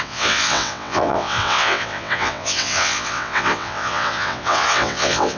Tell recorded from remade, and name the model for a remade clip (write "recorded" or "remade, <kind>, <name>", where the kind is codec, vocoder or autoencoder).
remade, vocoder, WaveNeXt